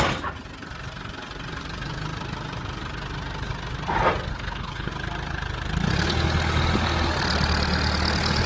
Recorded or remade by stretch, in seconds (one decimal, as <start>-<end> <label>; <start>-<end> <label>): 0.0-4.3 recorded; 4.3-4.9 remade; 4.9-8.5 recorded